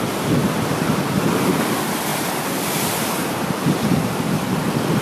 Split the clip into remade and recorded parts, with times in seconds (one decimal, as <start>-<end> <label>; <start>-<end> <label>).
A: 0.0-0.4 recorded; 0.4-1.6 remade; 1.6-2.1 recorded; 2.1-3.8 remade; 3.8-5.0 recorded